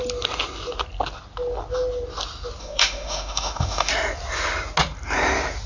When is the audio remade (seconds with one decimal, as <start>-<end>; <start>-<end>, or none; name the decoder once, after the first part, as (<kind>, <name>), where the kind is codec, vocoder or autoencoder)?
2.6-3.9 (autoencoder, DAC-VAE)